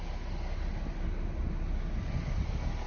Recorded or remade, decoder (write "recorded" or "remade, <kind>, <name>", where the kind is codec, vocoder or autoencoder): recorded